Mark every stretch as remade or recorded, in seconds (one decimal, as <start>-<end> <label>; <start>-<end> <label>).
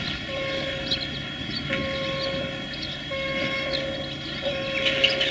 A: 0.0-5.3 recorded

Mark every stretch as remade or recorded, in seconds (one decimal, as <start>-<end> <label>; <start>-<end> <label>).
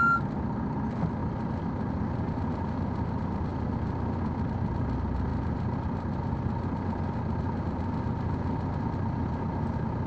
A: 0.0-10.1 recorded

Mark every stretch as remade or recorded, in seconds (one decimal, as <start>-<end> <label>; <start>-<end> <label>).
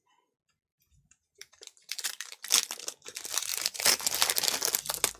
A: 0.0-0.7 recorded; 0.7-2.4 remade; 2.4-3.5 recorded; 3.5-4.2 remade; 4.2-5.2 recorded